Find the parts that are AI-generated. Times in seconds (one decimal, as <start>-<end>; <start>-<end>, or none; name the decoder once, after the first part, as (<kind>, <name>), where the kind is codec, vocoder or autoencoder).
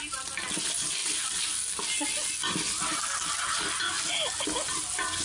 none